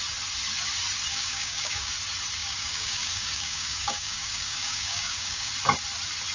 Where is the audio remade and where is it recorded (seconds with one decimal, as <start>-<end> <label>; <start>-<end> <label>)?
0.0-1.1 recorded; 1.1-1.9 remade; 1.9-2.4 recorded; 2.4-5.5 remade; 5.5-6.3 recorded